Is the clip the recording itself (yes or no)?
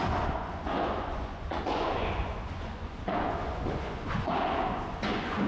no